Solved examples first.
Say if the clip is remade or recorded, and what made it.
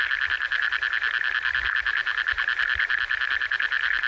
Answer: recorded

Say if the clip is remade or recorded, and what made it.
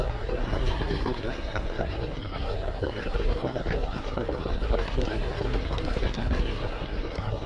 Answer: remade, codec, SNAC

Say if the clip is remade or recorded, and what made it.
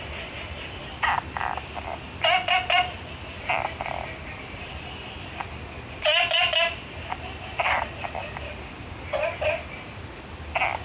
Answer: recorded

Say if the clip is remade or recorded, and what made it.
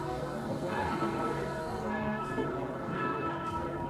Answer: remade, codec, SNAC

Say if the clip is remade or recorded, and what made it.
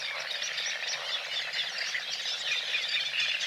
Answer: recorded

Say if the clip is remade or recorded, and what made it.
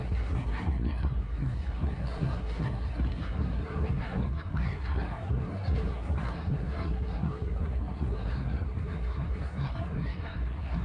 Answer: remade, codec, SNAC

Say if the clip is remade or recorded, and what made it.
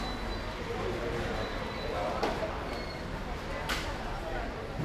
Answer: recorded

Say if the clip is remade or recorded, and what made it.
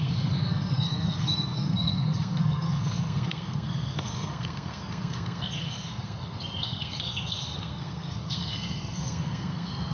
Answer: remade, codec, SNAC